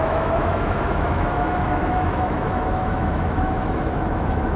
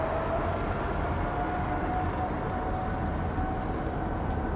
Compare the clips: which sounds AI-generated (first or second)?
first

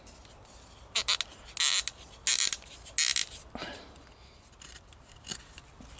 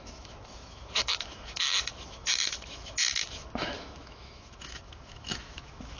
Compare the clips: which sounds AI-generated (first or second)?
second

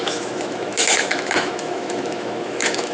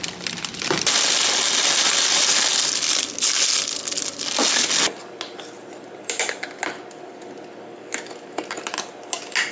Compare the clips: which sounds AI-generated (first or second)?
first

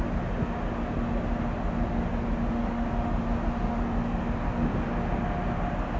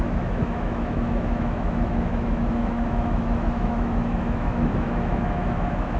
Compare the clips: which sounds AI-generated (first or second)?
second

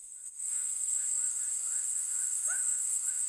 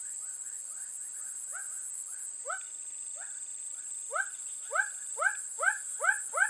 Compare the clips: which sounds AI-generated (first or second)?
first